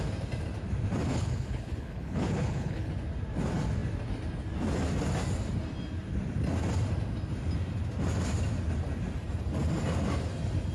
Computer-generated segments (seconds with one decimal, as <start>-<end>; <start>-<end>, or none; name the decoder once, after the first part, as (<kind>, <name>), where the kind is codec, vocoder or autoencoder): 1.1-2.9 (codec, HILCodec)